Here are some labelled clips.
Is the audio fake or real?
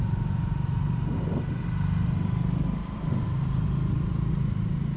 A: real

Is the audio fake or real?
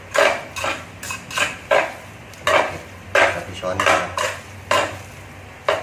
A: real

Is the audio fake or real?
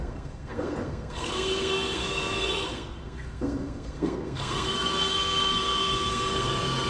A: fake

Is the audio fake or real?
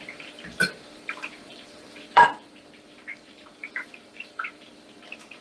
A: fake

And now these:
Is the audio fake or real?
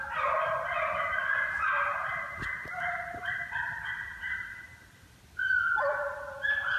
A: real